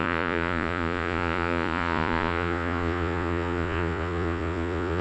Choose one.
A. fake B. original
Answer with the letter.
A